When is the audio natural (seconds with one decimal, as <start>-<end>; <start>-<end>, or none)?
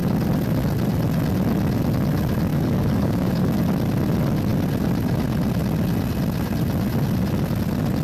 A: 0.0-2.5; 3.6-8.0